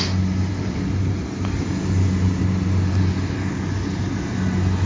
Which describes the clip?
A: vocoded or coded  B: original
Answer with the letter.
B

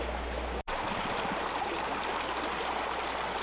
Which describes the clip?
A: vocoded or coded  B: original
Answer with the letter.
B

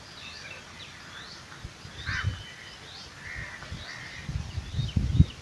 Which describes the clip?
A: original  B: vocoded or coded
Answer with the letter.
A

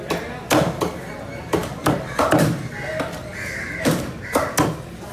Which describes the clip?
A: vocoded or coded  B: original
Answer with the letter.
B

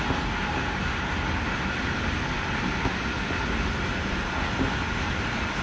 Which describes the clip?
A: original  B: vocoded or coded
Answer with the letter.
A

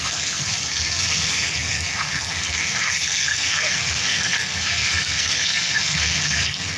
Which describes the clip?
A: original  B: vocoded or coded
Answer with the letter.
B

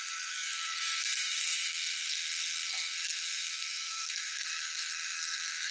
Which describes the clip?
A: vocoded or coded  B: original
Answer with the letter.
A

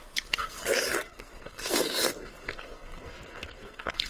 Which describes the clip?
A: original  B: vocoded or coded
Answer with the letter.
B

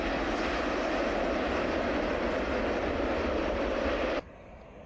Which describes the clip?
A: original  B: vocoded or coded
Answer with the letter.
A